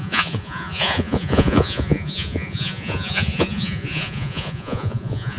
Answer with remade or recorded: remade